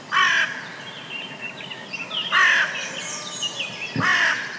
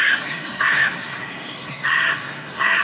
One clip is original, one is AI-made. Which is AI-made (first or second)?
second